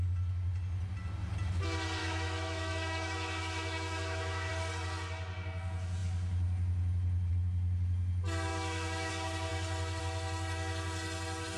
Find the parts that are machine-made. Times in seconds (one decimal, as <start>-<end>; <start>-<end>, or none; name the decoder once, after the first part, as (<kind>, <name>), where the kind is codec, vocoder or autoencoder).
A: 2.0-4.5 (autoencoder, DAC-VAE); 8.5-9.1